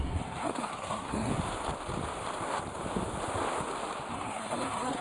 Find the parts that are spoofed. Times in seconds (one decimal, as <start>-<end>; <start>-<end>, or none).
0.0-1.3; 4.1-5.0